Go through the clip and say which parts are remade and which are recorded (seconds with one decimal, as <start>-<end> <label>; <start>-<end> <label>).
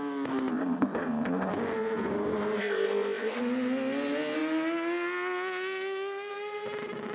0.0-0.5 recorded; 0.5-1.5 remade; 1.5-2.6 recorded; 2.6-3.4 remade; 3.4-7.1 recorded